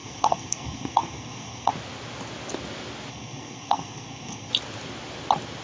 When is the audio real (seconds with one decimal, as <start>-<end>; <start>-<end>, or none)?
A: 1.7-3.1; 4.5-5.6